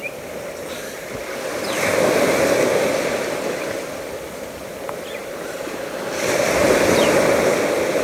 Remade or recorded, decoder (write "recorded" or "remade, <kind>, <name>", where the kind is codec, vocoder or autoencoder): recorded